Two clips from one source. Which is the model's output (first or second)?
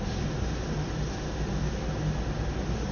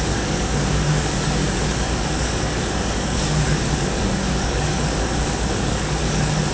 second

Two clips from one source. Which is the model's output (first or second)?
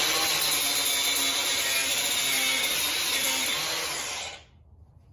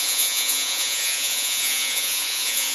second